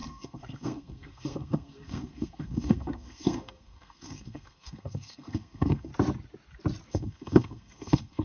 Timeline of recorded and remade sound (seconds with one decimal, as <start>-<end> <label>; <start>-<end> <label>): 0.0-5.9 remade; 5.9-6.9 recorded; 6.9-8.2 remade